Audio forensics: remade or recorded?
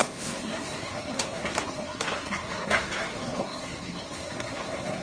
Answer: remade